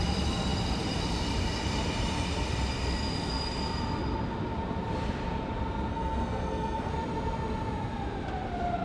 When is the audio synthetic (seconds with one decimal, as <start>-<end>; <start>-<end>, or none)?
5.9-6.9